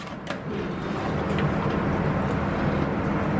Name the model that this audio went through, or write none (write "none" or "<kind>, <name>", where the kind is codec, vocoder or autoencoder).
none